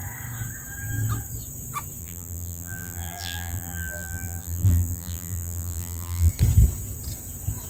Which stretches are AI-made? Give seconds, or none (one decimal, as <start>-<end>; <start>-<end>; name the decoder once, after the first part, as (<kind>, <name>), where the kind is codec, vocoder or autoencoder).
2.0-6.3 (vocoder, BigVGAN v2)